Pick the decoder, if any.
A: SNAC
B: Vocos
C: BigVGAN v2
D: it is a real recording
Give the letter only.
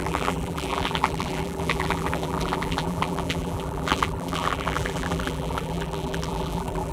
C